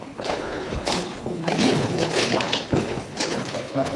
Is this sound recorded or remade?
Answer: remade